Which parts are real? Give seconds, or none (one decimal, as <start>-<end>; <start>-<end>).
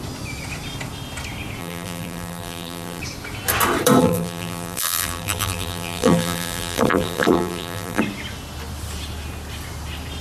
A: 0.0-1.6; 3.0-4.0; 8.0-10.2